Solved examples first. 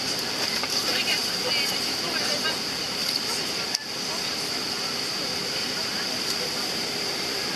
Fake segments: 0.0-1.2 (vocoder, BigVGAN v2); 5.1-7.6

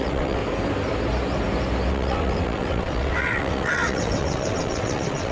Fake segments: 0.0-0.4 (vocoder, WaveNeXt); 1.9-5.3

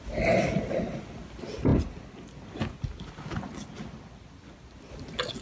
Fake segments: none

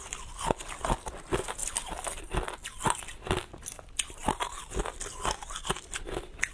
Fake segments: none

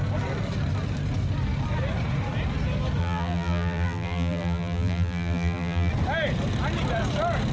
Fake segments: 3.0-5.9 (vocoder, BigVGAN v2)

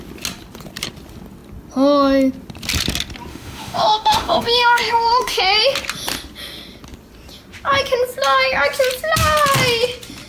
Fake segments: 3.3-5.4 (autoencoder, DAC-VAE)